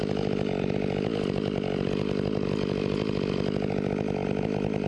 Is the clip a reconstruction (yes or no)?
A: no